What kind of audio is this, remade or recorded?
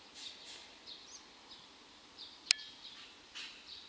recorded